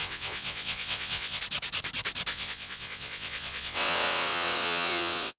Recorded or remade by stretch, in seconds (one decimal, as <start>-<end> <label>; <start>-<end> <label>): 0.0-1.4 remade; 1.4-2.3 recorded; 2.3-5.4 remade